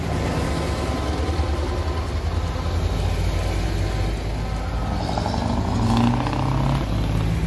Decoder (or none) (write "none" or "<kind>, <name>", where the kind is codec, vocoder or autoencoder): none